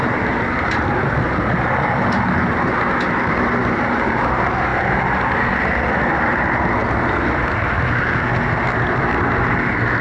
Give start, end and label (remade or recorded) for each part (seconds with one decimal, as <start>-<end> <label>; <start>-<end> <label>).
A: 0.0-3.6 recorded; 3.6-4.3 remade; 4.3-10.0 recorded